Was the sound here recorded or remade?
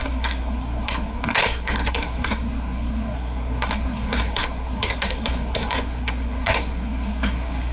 remade